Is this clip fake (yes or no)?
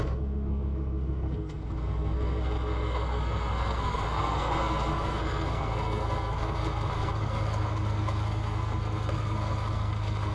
yes